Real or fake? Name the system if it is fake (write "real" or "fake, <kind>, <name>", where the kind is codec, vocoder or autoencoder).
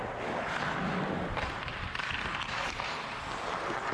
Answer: real